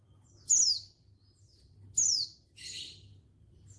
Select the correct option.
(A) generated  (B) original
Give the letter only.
B